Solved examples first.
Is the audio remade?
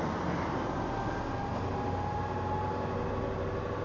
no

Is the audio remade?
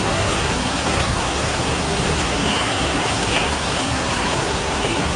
yes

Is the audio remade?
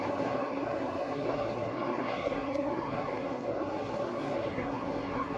yes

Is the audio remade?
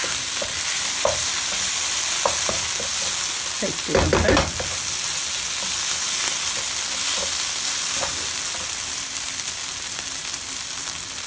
no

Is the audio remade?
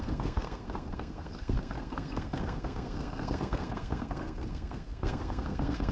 yes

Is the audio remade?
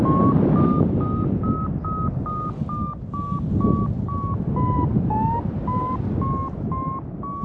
no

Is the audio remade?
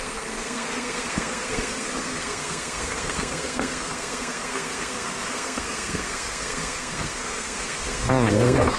yes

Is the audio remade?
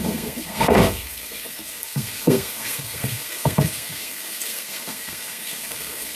yes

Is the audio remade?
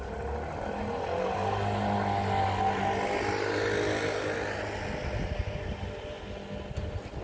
no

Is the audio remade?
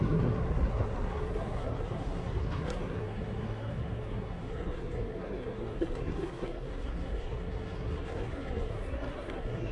yes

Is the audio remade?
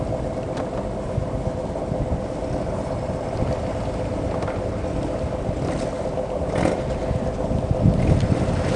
no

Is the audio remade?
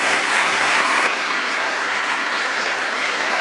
yes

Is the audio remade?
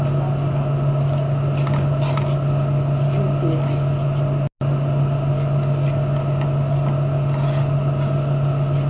no